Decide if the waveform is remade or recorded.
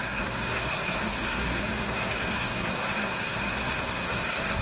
remade